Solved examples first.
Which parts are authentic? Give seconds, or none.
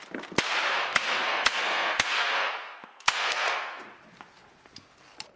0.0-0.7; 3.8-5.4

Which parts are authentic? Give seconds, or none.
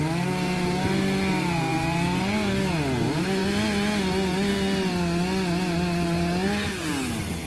0.0-7.5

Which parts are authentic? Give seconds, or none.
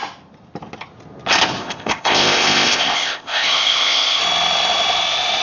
0.0-1.6; 4.2-5.4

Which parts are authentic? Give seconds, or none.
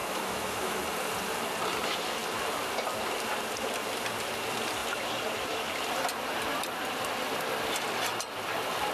0.8-8.9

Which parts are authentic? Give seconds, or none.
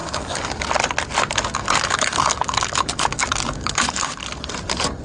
0.7-1.6; 4.1-5.0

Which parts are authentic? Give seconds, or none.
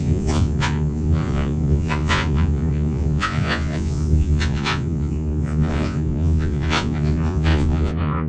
none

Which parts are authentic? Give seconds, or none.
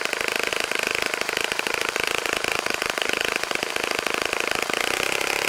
0.0-0.5; 3.7-5.5